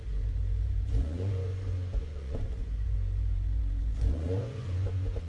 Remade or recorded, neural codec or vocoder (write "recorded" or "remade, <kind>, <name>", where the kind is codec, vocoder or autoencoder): remade, vocoder, Vocos